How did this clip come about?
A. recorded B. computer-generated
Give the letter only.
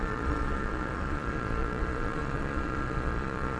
B